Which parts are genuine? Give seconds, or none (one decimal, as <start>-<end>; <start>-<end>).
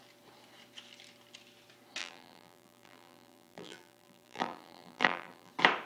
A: 0.0-2.0; 5.5-5.9